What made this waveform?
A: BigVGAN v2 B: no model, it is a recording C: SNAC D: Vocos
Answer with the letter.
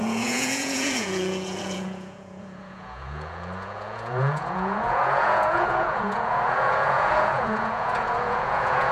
D